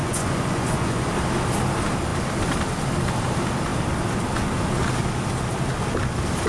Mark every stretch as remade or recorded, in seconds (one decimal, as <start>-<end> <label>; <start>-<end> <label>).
0.0-1.1 remade; 1.1-6.5 recorded